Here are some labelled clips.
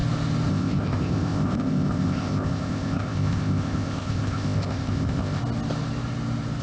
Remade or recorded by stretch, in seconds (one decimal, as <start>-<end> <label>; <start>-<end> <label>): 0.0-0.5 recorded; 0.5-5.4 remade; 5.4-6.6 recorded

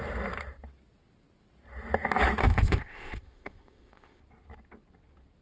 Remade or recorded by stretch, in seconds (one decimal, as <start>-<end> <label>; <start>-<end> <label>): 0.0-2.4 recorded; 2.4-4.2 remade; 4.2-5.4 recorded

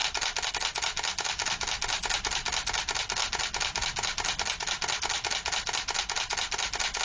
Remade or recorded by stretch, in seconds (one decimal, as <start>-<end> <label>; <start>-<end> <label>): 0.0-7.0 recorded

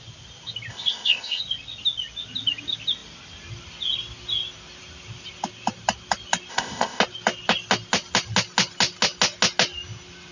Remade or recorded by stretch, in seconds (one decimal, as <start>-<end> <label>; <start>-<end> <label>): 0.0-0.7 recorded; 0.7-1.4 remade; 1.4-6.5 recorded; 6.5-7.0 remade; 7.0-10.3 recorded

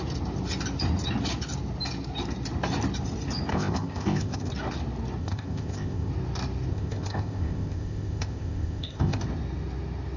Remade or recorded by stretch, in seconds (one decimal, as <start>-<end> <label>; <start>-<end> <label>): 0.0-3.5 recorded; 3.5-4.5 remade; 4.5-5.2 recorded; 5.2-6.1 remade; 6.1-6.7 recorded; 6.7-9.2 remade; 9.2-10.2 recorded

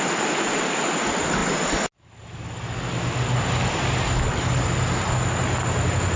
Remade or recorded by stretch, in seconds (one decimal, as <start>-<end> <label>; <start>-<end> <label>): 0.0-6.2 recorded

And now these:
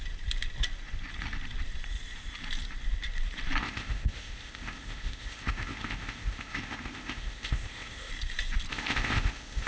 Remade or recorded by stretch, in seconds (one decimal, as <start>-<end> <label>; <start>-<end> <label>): 0.0-3.6 recorded; 3.6-8.1 remade; 8.1-8.7 recorded; 8.7-9.7 remade